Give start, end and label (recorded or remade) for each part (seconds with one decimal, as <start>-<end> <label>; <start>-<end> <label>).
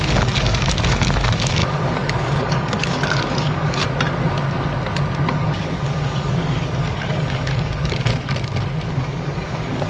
0.0-3.8 remade; 3.8-5.3 recorded; 5.3-8.1 remade; 8.1-8.9 recorded; 8.9-9.9 remade